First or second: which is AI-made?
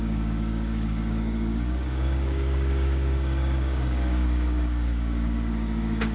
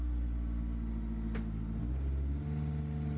first